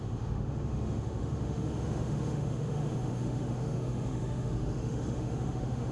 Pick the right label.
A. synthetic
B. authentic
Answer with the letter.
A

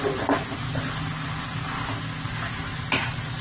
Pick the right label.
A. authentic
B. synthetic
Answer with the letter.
A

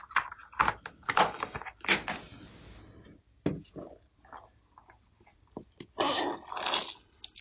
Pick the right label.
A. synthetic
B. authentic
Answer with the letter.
B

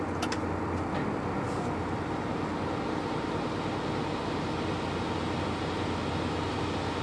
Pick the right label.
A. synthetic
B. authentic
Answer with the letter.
B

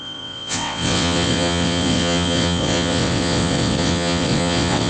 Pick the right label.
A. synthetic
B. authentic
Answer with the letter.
A